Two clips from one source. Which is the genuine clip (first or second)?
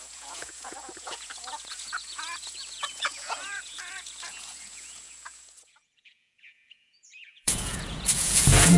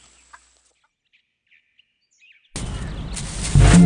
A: second